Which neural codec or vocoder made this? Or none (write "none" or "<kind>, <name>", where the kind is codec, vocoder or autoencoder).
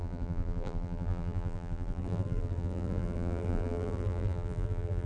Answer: vocoder, BigVGAN v2